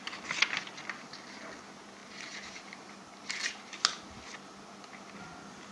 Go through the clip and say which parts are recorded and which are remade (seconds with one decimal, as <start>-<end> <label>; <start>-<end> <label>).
0.0-2.0 recorded; 2.0-3.6 remade; 3.6-5.7 recorded